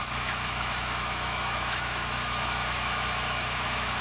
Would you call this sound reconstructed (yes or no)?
yes